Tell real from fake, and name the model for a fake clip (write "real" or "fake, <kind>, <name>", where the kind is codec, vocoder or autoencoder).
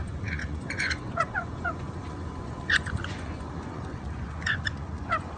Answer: fake, vocoder, Vocos